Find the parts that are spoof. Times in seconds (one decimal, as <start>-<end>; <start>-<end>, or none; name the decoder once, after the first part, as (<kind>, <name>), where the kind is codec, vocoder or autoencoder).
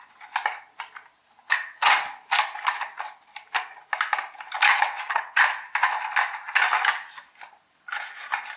1.4-2.0 (vocoder, WaveNeXt); 4.7-5.4